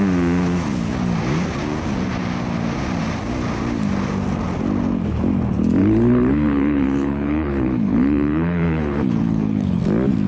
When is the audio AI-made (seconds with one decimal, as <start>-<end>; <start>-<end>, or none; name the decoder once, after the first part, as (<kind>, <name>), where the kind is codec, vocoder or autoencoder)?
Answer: 5.8-9.8 (codec, HILCodec)